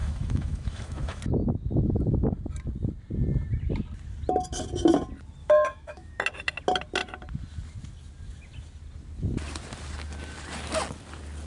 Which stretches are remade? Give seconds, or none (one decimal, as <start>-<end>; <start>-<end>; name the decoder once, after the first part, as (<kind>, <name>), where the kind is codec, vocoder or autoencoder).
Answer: 0.0-1.2 (autoencoder, DAC-VAE); 5.4-6.1